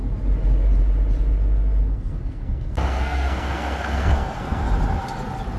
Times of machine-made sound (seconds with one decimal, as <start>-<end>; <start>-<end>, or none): 1.8-4.6